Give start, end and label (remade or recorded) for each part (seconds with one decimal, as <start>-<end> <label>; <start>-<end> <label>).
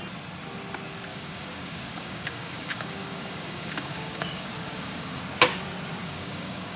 0.0-1.1 recorded; 1.1-5.2 remade; 5.2-6.0 recorded; 6.0-6.8 remade